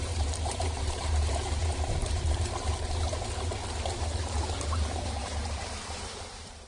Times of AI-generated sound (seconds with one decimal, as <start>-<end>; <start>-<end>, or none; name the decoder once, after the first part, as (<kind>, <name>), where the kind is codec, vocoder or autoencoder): 0.0-6.7 (vocoder, BigVGAN v2)

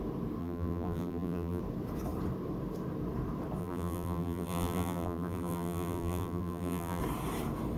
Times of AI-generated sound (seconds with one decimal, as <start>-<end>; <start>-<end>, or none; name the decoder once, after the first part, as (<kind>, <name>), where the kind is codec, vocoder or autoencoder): 0.4-1.6 (vocoder, BigVGAN v2); 3.6-7.0